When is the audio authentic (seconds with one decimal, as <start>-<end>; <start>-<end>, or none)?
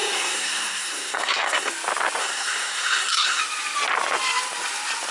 1.7-2.2; 3.4-5.1